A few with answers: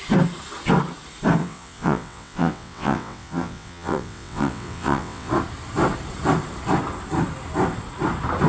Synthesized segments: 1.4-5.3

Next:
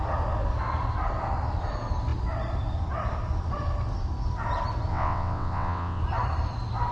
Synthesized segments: 4.9-6.0

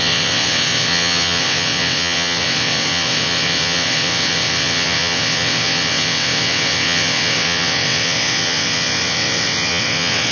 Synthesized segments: 0.0-10.3

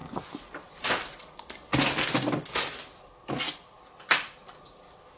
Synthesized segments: none